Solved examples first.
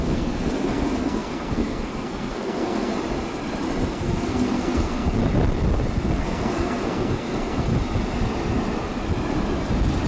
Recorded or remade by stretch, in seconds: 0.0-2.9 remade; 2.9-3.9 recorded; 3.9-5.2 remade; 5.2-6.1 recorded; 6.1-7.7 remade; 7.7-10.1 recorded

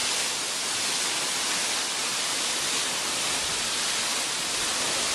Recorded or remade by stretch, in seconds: 0.0-5.1 recorded

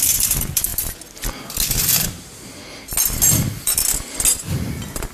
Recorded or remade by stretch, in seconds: 0.0-0.7 remade; 0.7-3.3 recorded; 3.3-3.8 remade; 3.8-4.5 recorded; 4.5-5.1 remade

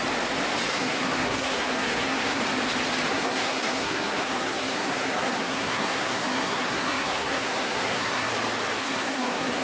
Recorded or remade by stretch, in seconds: 0.0-0.7 recorded; 0.7-2.4 remade; 2.4-3.1 recorded; 3.1-8.3 remade; 8.3-8.8 recorded; 8.8-9.6 remade

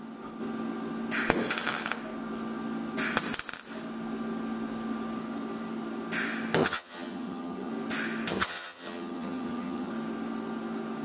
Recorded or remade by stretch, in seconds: 0.0-6.6 recorded; 6.6-7.7 remade; 7.7-8.3 recorded; 8.3-9.9 remade; 9.9-11.0 recorded

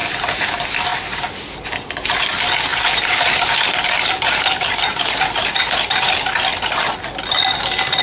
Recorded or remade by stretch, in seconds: 0.0-0.5 remade; 0.5-2.7 recorded; 2.7-5.3 remade; 5.3-8.0 recorded

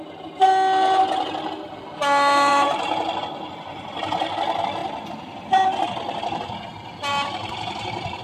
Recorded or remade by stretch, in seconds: 0.0-2.5 recorded; 2.5-4.3 remade; 4.3-7.1 recorded; 7.1-8.2 remade